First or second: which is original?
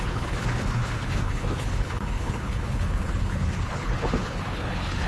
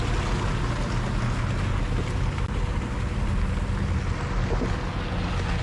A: second